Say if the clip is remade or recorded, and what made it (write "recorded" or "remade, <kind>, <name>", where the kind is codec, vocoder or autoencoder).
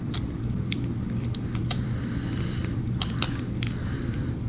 remade, vocoder, BigVGAN v2